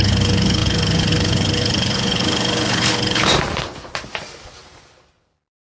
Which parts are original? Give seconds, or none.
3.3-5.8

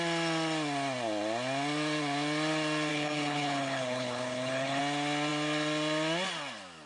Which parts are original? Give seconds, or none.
0.0-2.9; 4.8-6.9